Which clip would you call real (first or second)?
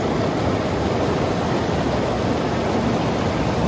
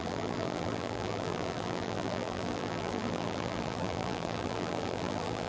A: first